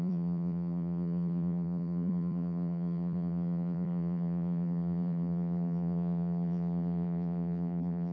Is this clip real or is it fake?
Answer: fake